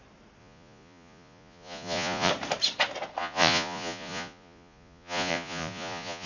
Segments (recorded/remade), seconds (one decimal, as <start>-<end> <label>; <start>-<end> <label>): 0.0-0.4 recorded; 0.4-2.3 remade; 2.3-3.2 recorded; 3.2-6.3 remade